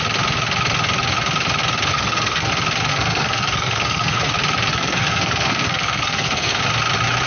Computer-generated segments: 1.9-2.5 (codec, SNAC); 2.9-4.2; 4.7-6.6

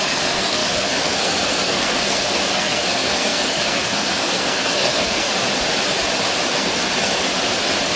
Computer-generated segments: 0.0-5.3 (codec, SNAC); 6.5-7.3

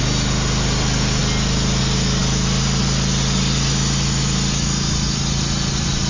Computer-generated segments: none